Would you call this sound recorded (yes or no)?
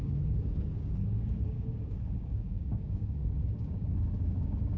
no